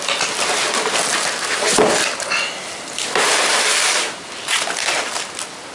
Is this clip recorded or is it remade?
recorded